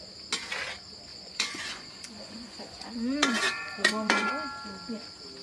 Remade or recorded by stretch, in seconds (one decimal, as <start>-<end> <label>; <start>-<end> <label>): 0.0-1.1 recorded; 1.1-4.3 remade; 4.3-5.4 recorded